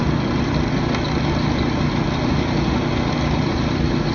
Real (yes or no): yes